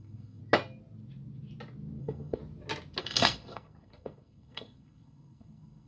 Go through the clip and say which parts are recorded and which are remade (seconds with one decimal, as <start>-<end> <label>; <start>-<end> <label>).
0.0-0.4 remade; 0.4-2.0 recorded; 2.0-2.4 remade; 2.4-3.0 recorded; 3.0-5.9 remade

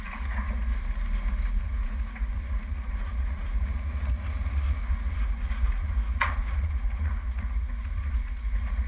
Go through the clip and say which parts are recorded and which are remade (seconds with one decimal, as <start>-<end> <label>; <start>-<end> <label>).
0.0-0.7 remade; 0.7-1.5 recorded; 1.5-8.9 remade